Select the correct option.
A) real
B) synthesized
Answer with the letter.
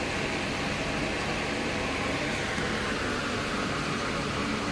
A